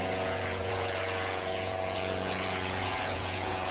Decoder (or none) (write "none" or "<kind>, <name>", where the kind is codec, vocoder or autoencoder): vocoder, Vocos